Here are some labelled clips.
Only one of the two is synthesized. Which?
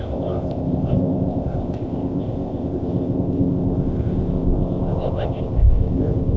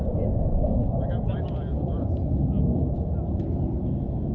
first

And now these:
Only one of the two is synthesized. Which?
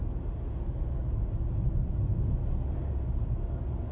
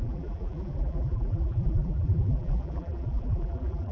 second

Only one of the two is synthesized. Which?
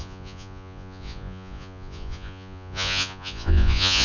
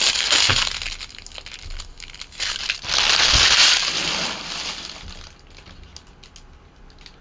first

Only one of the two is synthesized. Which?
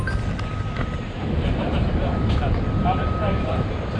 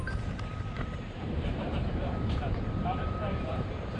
second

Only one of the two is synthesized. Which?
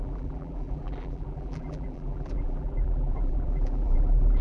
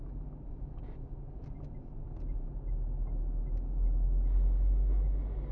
first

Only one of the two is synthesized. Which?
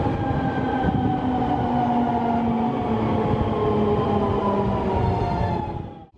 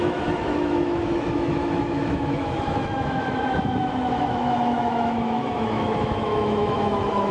second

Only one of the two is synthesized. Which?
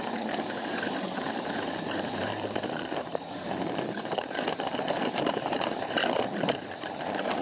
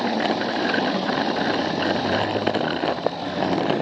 first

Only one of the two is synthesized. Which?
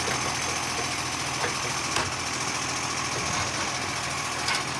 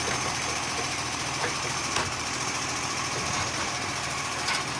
second